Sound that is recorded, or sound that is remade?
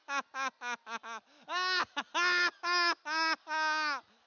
recorded